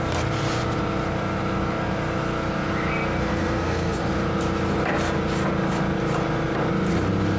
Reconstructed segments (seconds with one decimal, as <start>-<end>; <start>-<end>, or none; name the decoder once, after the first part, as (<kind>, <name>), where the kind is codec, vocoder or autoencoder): 3.2-4.1 (codec, SNAC)